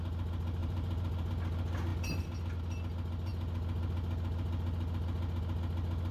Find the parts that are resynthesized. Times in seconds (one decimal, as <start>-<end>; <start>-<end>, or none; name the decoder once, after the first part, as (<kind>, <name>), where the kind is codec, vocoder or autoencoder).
0.6-1.3 (vocoder, BigVGAN v2)